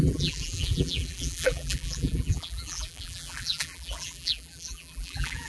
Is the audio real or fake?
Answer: fake